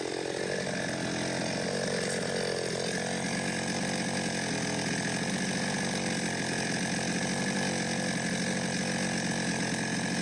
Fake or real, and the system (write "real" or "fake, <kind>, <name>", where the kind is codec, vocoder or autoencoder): real